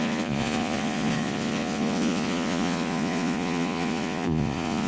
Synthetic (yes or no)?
yes